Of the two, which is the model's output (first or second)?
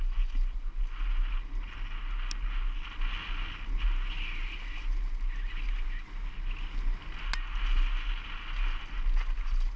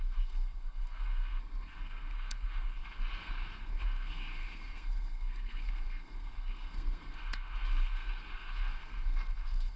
second